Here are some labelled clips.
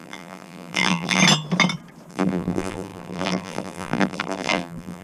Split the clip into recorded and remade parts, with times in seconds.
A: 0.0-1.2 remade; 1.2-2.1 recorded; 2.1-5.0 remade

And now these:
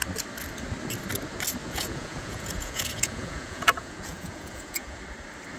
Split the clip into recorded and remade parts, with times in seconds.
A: 0.0-1.6 recorded; 1.6-5.0 remade; 5.0-5.6 recorded

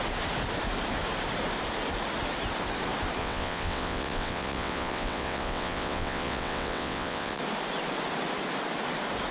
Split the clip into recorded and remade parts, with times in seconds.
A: 0.0-3.2 recorded; 3.2-7.4 remade; 7.4-9.3 recorded

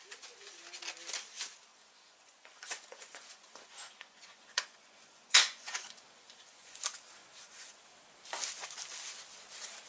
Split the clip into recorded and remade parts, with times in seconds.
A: 0.0-1.7 recorded; 1.7-6.8 remade; 6.8-7.2 recorded; 7.2-7.8 remade; 7.8-9.9 recorded

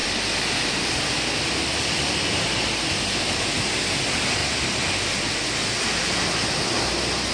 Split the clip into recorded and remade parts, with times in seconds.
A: 0.0-7.3 recorded